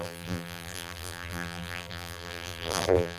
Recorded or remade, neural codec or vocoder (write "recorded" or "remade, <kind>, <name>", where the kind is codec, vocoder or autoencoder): remade, vocoder, BigVGAN v2